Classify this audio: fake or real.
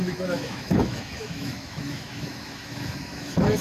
fake